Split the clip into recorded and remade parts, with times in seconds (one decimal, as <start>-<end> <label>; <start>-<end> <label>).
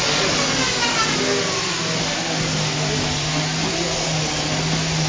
0.0-5.1 recorded